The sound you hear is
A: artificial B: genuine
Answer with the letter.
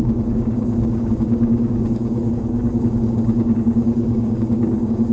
A